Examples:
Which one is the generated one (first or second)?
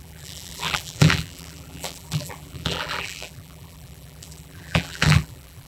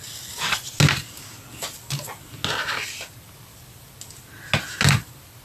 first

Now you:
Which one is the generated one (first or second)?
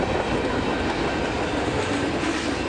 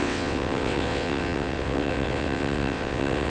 second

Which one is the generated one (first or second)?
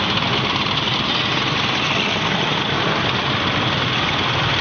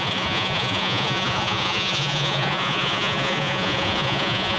second